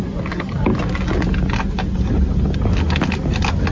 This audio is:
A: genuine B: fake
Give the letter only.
A